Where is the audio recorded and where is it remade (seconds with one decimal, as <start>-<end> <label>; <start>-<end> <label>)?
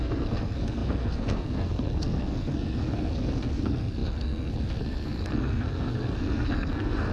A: 0.0-7.1 remade